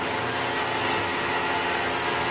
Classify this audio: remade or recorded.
recorded